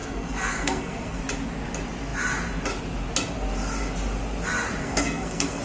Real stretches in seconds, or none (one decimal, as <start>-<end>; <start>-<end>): 1.2-4.8